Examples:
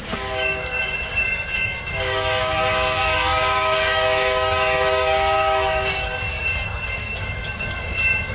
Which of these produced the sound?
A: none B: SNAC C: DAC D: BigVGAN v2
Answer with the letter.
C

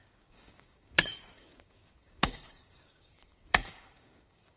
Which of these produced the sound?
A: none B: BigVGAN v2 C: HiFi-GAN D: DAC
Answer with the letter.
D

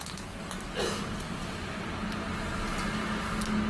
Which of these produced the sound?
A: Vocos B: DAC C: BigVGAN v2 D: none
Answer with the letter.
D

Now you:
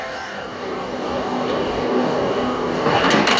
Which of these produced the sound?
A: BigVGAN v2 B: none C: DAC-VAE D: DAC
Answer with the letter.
D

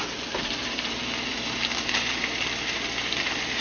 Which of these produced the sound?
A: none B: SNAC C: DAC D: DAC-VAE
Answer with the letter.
A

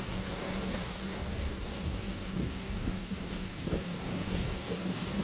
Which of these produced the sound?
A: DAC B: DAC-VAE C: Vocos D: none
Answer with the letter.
A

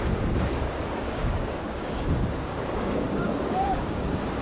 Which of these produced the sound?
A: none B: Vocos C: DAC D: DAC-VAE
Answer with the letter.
C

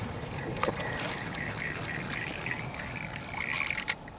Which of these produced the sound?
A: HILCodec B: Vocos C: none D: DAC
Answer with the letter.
C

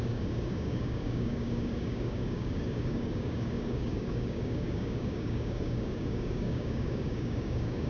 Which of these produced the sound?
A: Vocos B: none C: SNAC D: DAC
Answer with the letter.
D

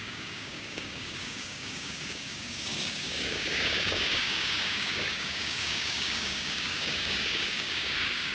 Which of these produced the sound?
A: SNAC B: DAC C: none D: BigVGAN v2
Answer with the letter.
B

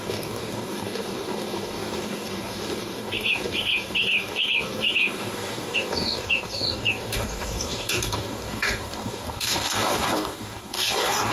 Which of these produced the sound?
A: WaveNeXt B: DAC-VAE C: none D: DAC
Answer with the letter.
D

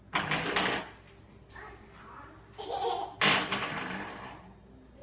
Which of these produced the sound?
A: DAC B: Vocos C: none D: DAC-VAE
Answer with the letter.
C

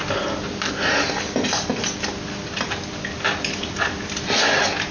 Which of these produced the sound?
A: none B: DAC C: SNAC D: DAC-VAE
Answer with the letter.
A